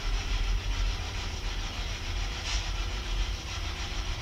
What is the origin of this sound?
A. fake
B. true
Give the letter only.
A